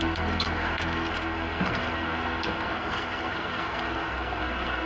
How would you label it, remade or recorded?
remade